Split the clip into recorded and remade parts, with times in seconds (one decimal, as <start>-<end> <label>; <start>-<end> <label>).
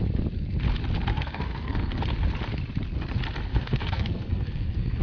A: 0.0-1.1 recorded; 1.1-2.0 remade; 2.0-3.5 recorded; 3.5-5.0 remade